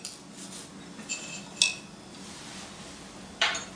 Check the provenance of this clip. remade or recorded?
recorded